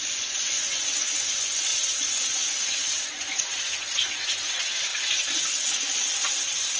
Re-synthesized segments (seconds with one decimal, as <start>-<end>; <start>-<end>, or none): 0.0-4.9